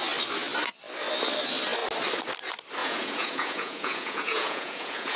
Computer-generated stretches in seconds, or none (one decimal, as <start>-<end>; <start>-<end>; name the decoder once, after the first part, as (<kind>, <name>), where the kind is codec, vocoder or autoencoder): 2.8-5.2 (vocoder, Vocos)